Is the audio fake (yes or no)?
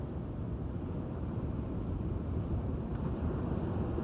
no